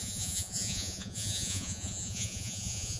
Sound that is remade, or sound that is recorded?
remade